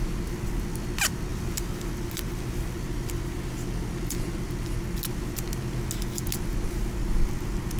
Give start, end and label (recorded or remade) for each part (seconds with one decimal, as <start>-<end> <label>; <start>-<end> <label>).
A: 0.0-7.8 recorded